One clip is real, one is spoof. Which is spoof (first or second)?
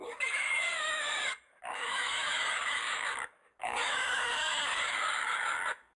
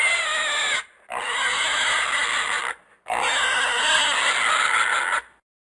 first